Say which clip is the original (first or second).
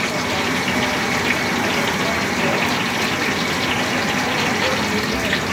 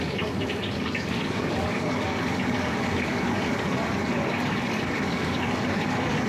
first